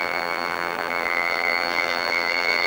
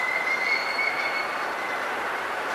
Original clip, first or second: second